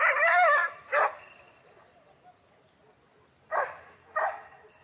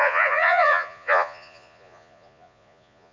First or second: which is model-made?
second